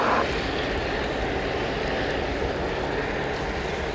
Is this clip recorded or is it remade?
recorded